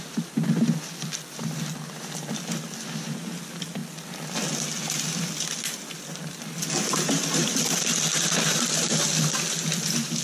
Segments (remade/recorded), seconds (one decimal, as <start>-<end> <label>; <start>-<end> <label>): 0.0-10.2 recorded